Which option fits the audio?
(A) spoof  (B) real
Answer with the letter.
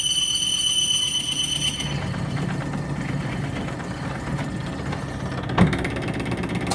B